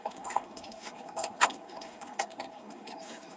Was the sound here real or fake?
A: fake